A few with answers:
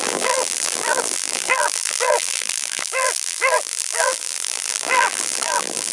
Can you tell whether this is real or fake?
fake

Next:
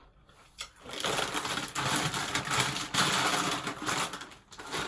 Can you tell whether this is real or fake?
real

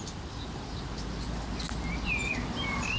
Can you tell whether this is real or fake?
real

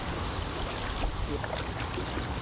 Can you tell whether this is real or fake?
real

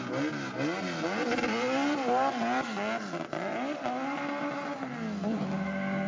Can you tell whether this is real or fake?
real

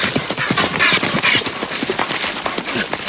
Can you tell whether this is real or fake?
real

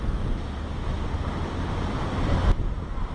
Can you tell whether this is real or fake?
real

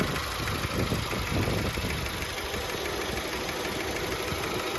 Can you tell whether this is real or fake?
real